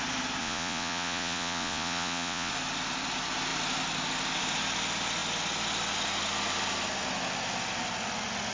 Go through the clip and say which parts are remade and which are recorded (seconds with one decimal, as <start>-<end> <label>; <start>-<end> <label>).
0.0-0.4 recorded; 0.4-2.5 remade; 2.5-8.5 recorded